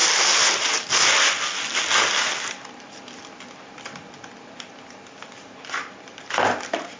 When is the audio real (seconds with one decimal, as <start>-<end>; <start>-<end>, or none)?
0.0-7.0